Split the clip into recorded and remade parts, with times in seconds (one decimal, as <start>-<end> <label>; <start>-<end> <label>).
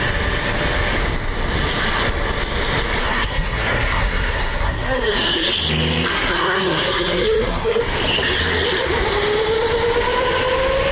0.0-3.0 recorded; 3.0-5.5 remade; 5.5-6.1 recorded; 6.1-7.8 remade; 7.8-10.9 recorded